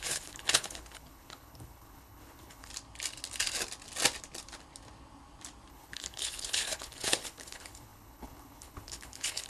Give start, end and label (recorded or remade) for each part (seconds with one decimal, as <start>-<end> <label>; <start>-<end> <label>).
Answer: 0.0-2.7 remade; 2.7-5.7 recorded; 5.7-9.5 remade